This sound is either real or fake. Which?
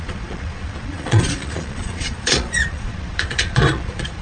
fake